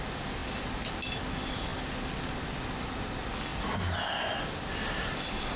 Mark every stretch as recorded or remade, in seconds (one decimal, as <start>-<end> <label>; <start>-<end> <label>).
0.0-5.6 recorded